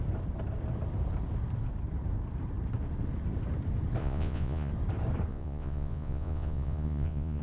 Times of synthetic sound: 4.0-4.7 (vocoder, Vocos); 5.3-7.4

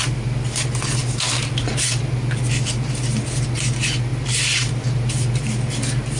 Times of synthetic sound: none

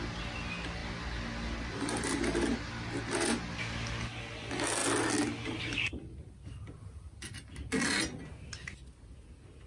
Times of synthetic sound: none

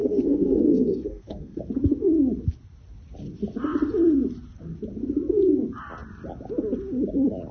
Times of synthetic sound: 0.0-1.6 (codec, SNAC)

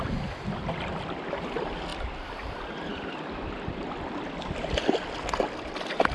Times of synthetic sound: 1.9-4.5 (vocoder, BigVGAN v2)

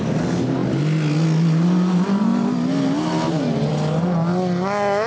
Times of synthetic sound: none

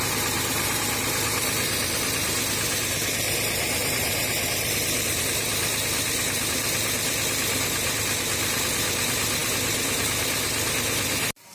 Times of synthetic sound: 3.8-5.2 (vocoder, BigVGAN v2)

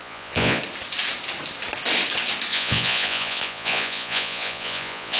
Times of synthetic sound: 0.0-0.6 (vocoder, Vocos); 2.5-5.2